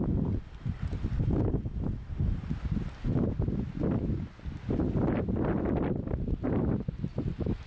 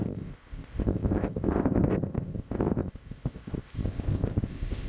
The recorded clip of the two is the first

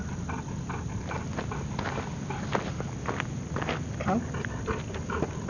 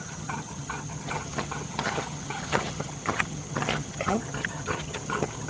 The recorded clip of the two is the first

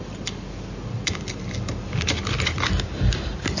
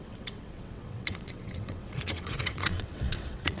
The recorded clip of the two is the first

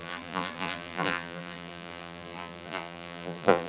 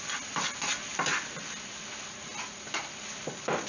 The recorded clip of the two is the second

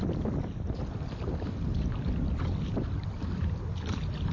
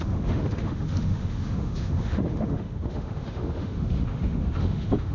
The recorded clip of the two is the first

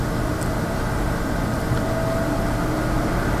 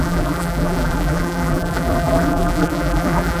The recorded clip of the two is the first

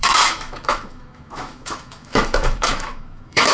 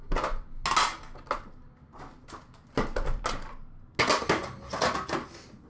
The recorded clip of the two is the second